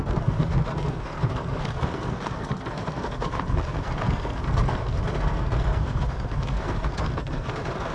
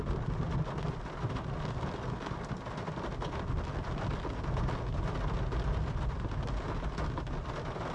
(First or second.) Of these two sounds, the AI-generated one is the first